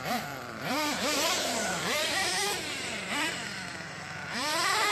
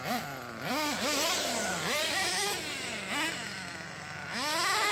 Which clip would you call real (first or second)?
second